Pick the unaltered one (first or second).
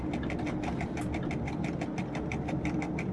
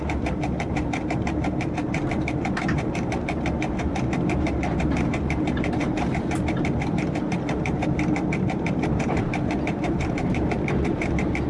first